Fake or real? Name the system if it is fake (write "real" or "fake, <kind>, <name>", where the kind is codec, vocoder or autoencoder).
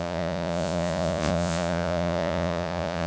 fake, vocoder, Vocos